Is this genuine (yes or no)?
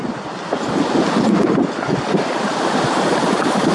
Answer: yes